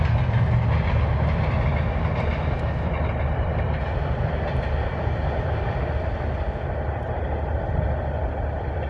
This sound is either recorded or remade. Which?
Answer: remade